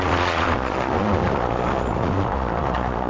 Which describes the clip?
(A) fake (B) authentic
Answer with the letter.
A